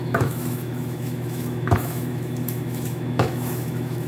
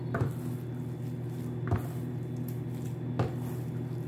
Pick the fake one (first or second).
first